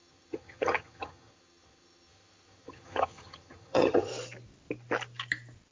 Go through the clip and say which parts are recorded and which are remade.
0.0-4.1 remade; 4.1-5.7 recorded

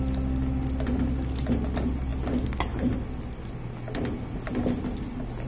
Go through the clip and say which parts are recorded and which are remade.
0.0-5.5 recorded

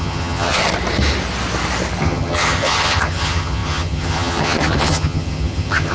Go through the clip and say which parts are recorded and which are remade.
0.0-0.6 remade; 0.6-2.0 recorded; 2.0-5.9 remade